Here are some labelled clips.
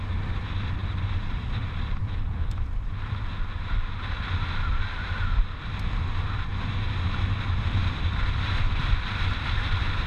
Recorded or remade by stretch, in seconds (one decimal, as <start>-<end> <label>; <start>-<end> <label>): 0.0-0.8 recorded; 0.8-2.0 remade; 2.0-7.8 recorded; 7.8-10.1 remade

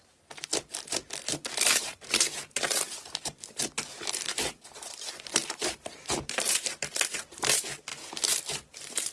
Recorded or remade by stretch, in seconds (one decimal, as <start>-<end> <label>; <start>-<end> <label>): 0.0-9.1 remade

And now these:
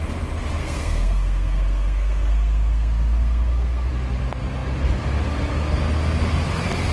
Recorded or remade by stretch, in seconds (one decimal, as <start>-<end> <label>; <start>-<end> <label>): 0.0-0.6 recorded; 0.6-3.9 remade; 3.9-6.9 recorded

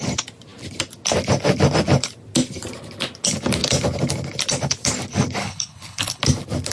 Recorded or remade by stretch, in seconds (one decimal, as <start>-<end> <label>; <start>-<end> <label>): 0.0-5.4 recorded; 5.4-6.2 remade; 6.2-6.7 recorded

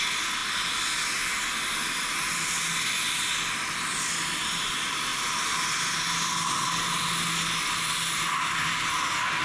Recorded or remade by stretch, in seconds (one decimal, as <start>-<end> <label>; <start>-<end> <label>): 0.0-9.4 recorded

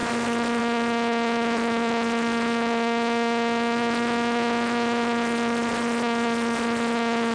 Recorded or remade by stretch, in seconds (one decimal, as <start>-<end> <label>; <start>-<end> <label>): 0.0-7.3 recorded

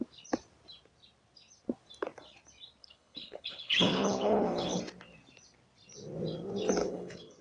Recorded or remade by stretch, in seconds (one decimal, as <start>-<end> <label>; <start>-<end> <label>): 0.0-2.8 recorded; 2.8-4.8 remade; 4.8-6.8 recorded; 6.8-7.4 remade